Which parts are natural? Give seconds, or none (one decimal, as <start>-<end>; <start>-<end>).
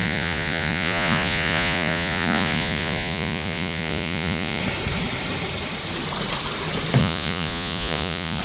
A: 4.6-7.0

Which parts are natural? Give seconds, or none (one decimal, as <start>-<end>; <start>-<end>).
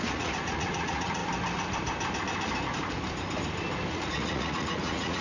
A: 1.2-3.9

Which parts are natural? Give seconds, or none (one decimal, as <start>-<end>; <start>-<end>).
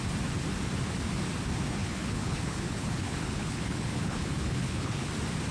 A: 0.0-1.8; 5.1-5.5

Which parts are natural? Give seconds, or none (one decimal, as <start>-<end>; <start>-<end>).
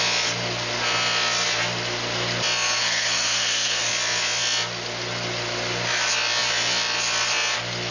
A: 0.0-2.8; 3.9-7.9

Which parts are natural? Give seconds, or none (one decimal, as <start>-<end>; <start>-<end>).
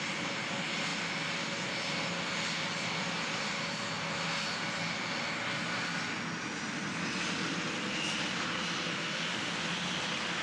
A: 0.0-8.9; 9.5-10.4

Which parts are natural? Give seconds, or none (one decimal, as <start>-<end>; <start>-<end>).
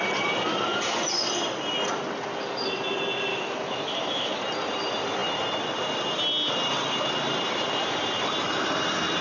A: 0.0-3.3; 4.4-9.2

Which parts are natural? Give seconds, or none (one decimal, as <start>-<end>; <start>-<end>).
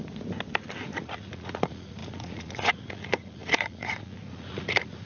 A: 0.0-0.8